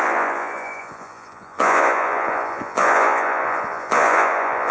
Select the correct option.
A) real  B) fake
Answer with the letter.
B